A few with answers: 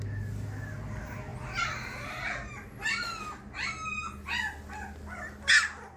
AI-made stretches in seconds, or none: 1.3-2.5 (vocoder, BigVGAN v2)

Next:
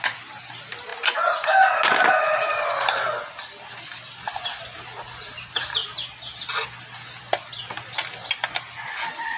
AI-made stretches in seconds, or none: none